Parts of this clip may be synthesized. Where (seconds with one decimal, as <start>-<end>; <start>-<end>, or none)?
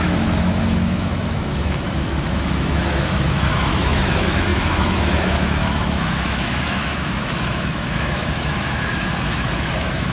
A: 0.0-10.1